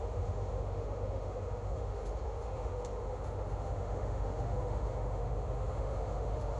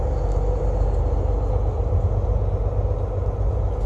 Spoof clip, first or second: first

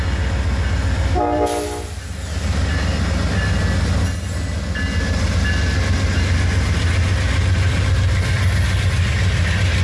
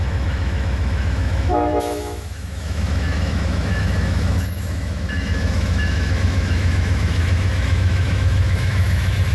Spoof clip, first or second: second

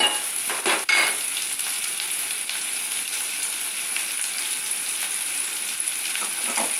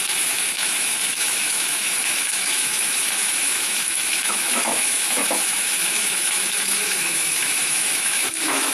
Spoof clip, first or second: second